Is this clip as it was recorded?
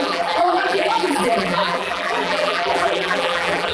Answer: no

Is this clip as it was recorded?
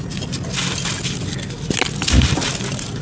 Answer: yes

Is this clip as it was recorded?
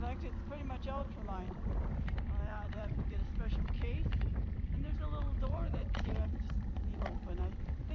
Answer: no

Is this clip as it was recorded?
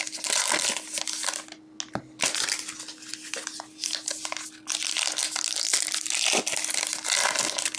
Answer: yes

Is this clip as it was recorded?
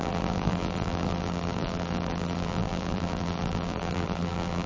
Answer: no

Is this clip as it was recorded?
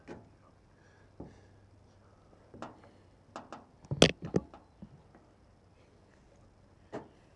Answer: yes